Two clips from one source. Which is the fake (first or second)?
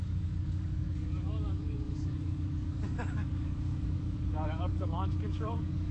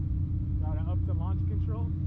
first